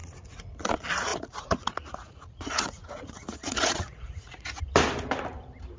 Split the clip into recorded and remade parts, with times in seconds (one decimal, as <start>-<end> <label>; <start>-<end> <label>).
0.0-0.6 remade; 0.6-1.1 recorded; 1.1-4.6 remade; 4.6-5.8 recorded